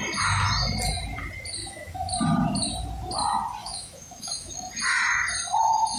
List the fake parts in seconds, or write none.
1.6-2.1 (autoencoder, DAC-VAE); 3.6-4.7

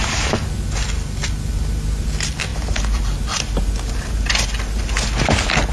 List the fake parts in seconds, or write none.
0.0-0.6 (vocoder, BigVGAN v2); 2.5-4.3

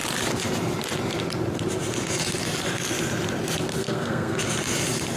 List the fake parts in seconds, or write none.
3.8-4.4 (codec, SNAC)

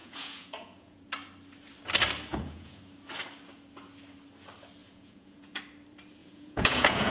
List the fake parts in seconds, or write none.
0.0-1.0 (vocoder, Vocos); 2.3-2.8; 4.8-5.6; 6.2-7.1